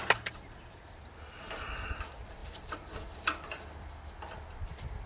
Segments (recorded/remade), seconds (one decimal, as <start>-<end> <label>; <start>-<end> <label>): 0.0-2.4 recorded; 2.4-5.1 remade

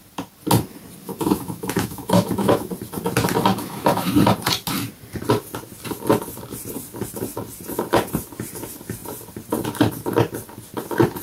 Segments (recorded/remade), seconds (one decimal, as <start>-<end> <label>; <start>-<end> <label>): 0.0-1.0 recorded; 1.0-2.7 remade; 2.7-3.5 recorded; 3.5-4.1 remade; 4.1-11.2 recorded

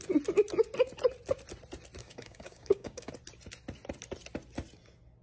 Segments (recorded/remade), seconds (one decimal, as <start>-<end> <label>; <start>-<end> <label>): 0.0-2.0 recorded; 2.0-3.1 remade; 3.1-5.2 recorded

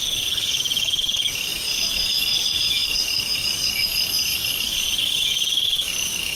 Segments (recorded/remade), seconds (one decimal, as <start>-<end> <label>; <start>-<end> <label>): 0.0-6.4 remade

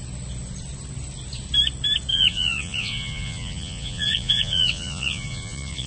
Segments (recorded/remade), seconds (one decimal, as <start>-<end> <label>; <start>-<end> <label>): 0.0-2.1 recorded; 2.1-5.9 remade

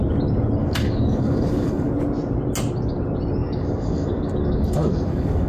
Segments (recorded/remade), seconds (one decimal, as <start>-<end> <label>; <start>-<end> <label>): 0.0-0.6 recorded; 0.6-1.9 remade; 1.9-3.4 recorded; 3.4-5.5 remade

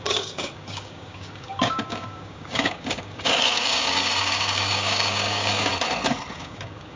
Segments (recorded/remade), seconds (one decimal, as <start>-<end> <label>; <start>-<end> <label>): 0.0-5.7 remade; 5.7-6.3 recorded; 6.3-7.0 remade

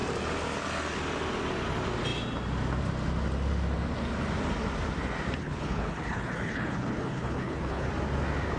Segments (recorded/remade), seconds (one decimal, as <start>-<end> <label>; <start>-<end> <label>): 0.0-5.4 recorded; 5.4-7.9 remade; 7.9-8.6 recorded